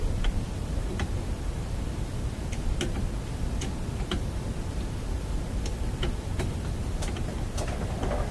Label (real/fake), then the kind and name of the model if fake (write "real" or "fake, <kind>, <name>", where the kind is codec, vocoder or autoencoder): fake, vocoder, BigVGAN v2